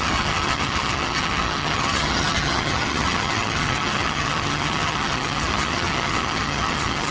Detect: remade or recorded remade